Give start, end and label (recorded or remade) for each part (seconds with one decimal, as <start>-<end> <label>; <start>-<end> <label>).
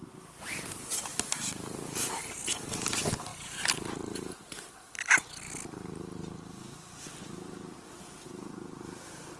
0.0-9.4 recorded